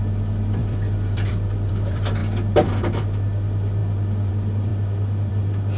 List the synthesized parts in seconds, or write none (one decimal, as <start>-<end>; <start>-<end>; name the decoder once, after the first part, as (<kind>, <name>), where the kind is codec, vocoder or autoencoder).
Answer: 0.0-3.8 (vocoder, BigVGAN v2); 4.3-5.8